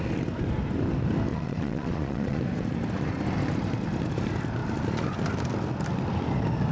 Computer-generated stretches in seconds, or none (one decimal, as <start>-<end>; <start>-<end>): 1.3-2.4